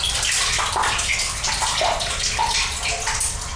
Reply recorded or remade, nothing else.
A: recorded